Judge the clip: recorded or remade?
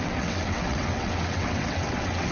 remade